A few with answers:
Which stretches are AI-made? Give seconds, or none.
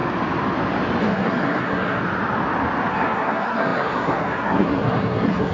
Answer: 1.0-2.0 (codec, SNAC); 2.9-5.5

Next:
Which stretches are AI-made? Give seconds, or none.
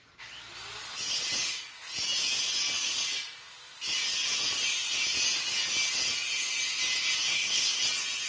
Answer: 7.3-7.8 (codec, SNAC)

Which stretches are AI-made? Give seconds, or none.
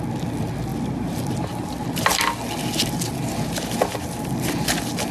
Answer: none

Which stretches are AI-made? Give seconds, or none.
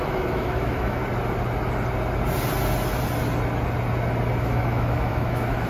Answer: 0.0-1.0 (autoencoder, DAC-VAE); 4.4-5.7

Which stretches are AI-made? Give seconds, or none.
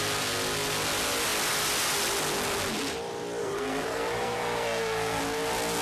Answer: 3.4-5.2 (codec, SNAC)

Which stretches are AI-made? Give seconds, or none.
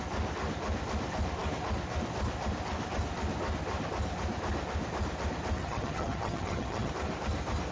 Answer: 5.6-6.9 (vocoder, HiFi-GAN)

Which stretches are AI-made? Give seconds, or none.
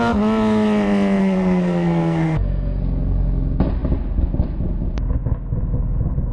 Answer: 1.2-2.8 (codec, SNAC)